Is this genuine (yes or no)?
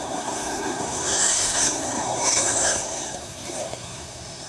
no